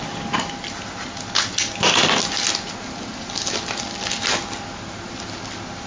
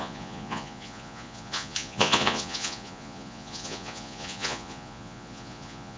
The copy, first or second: second